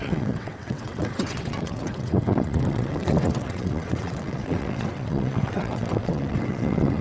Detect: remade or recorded remade